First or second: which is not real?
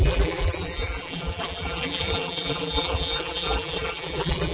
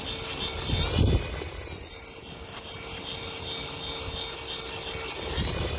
first